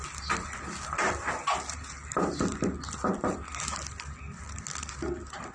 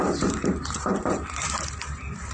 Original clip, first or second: first